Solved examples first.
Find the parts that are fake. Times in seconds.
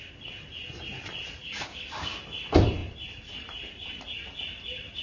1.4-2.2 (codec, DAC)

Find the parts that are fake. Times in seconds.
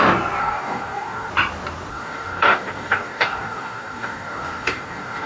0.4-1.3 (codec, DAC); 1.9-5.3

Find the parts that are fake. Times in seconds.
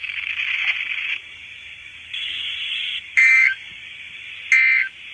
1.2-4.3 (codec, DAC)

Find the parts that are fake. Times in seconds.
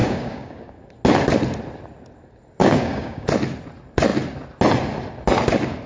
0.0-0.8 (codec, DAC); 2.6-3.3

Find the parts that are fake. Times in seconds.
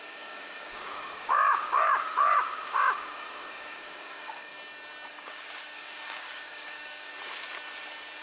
0.0-4.5 (codec, DAC); 5.1-7.1